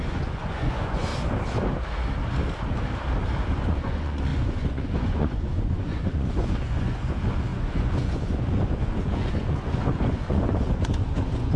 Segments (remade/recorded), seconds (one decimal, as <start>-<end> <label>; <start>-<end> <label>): 0.0-1.1 remade; 1.1-3.5 recorded; 3.5-11.6 remade